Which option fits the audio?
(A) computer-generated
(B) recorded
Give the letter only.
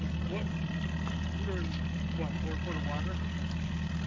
B